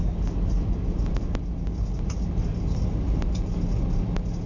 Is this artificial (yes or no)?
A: no